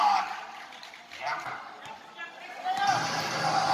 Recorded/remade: recorded